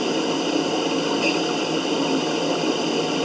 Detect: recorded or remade recorded